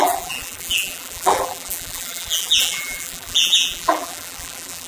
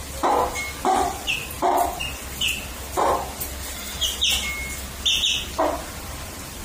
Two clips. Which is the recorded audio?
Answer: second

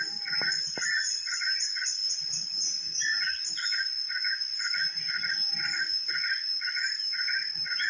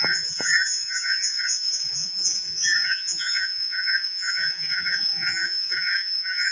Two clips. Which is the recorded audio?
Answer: first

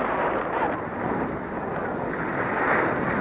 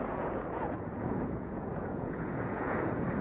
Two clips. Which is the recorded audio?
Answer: first